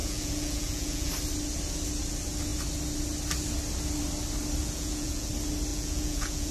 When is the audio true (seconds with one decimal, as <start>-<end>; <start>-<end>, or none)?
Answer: 1.1-4.6; 5.3-5.7